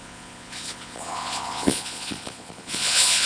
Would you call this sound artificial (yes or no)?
yes